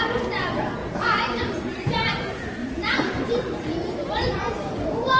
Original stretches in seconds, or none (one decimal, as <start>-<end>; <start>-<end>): 0.0-0.8; 1.9-2.6; 4.5-5.2